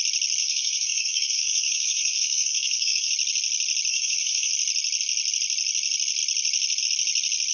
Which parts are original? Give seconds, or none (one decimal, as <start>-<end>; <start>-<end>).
0.0-0.4; 3.1-3.9; 4.5-7.5